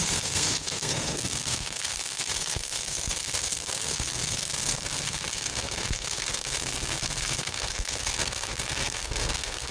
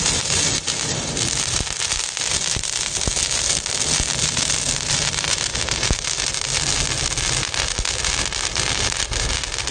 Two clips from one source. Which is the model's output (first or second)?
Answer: first